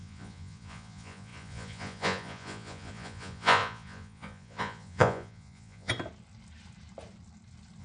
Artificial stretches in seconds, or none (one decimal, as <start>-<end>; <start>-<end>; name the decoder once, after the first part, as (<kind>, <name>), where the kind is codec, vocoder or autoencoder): 0.0-5.9 (vocoder, Vocos)